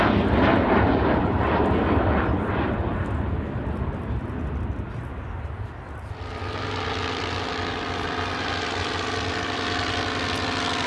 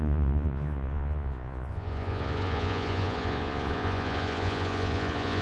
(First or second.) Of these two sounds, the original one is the first